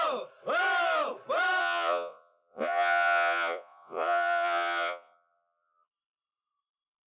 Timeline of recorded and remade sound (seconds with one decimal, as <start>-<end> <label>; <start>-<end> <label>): 0.0-1.6 recorded; 1.6-5.9 remade; 5.9-7.1 recorded